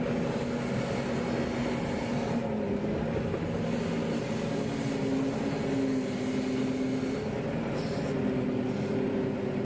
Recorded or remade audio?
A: recorded